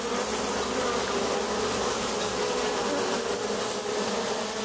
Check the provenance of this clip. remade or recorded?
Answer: recorded